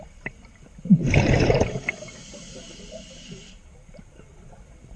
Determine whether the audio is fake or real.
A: fake